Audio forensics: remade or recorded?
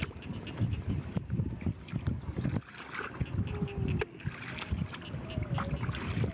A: recorded